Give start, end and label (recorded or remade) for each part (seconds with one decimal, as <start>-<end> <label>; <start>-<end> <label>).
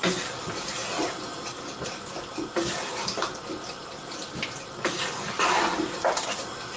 0.0-6.8 recorded